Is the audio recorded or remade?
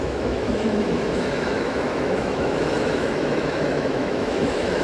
remade